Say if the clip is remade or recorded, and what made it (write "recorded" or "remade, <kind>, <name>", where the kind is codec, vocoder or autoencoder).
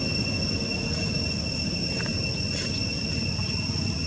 recorded